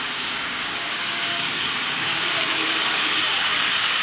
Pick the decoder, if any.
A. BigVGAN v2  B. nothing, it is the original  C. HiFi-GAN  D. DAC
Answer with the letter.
D